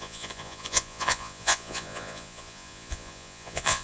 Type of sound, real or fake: fake